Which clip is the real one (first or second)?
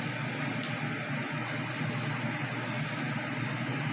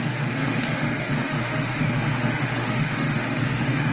first